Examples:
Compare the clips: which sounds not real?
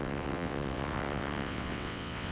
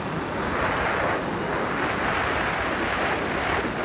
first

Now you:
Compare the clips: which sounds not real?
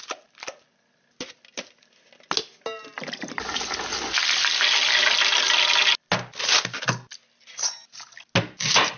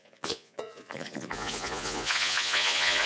second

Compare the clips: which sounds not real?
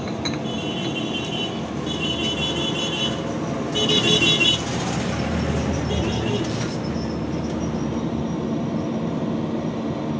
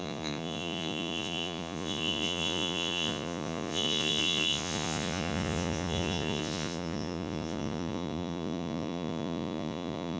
second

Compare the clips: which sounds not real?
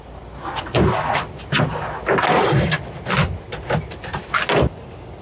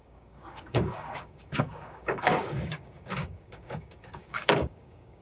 second